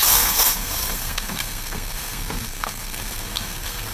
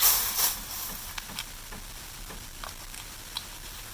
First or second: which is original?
second